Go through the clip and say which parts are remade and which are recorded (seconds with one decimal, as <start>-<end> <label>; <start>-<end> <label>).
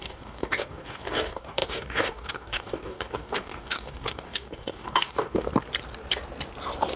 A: 0.0-5.5 remade; 5.5-7.0 recorded